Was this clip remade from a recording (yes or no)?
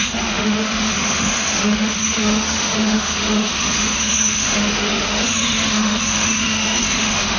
yes